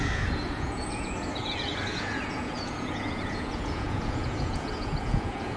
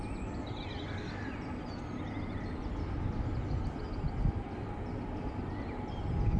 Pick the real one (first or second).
second